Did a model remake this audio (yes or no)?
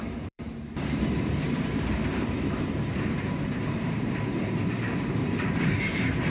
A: yes